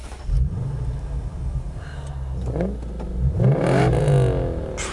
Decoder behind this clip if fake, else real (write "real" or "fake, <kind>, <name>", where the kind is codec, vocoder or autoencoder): real